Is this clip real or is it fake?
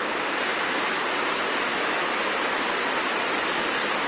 real